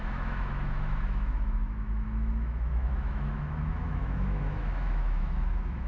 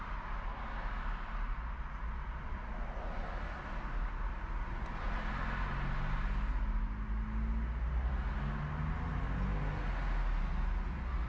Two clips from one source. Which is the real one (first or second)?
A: second